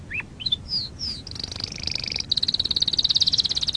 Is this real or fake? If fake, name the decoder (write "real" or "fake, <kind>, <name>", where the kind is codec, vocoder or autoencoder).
real